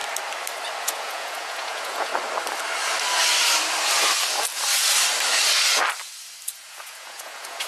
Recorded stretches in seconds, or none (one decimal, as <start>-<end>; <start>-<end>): 0.0-0.8; 2.1-6.7